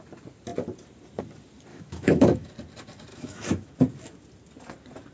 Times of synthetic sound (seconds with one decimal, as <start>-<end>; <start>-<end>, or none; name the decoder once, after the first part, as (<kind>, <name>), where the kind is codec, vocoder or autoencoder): 1.7-2.5 (autoencoder, DAC-VAE); 3.1-3.7